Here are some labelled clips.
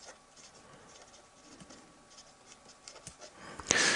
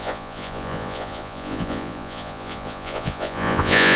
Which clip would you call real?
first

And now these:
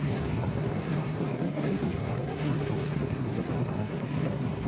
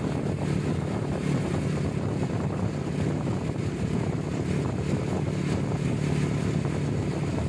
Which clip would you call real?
second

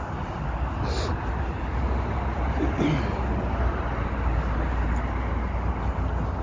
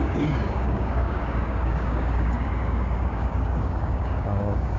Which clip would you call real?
first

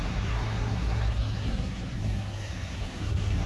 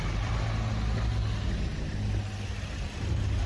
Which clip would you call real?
second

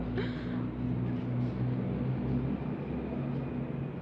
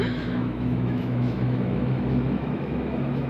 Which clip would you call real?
first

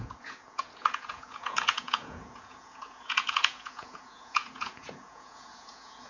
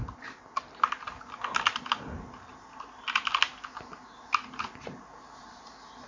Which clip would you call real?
second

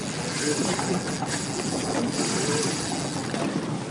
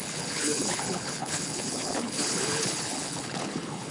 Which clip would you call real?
first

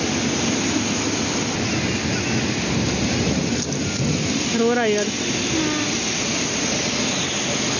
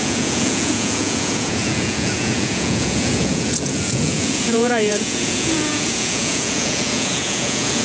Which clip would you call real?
first